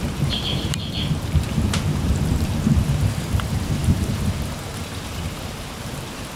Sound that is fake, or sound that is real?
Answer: fake